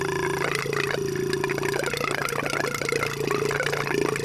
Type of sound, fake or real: real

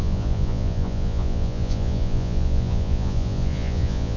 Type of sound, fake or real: fake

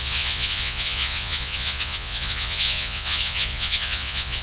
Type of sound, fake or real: fake